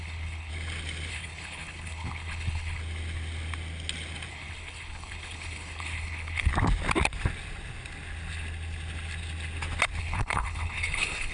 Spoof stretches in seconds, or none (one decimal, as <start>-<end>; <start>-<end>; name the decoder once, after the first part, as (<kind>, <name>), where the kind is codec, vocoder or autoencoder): 0.0-0.5 (codec, HILCodec); 1.1-2.8; 4.3-6.5; 10.0-11.3